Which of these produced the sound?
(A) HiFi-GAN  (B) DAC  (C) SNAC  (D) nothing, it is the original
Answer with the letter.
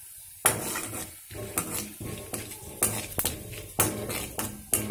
D